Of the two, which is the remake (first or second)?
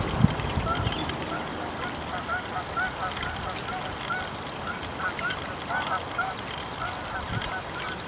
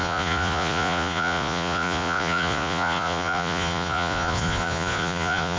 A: second